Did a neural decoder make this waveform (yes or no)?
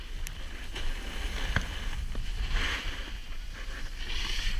no